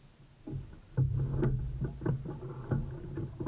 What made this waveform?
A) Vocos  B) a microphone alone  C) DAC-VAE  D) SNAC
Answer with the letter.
B